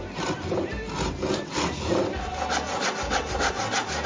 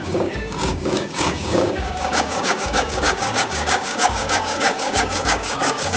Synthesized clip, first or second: second